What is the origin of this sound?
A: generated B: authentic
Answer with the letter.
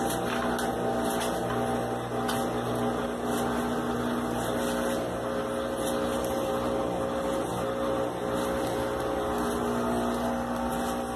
B